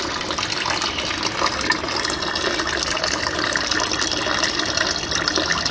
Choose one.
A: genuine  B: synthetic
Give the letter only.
A